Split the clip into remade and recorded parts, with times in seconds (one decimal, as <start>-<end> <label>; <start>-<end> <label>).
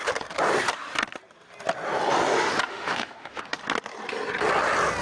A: 0.0-2.7 recorded; 2.7-3.4 remade; 3.4-5.0 recorded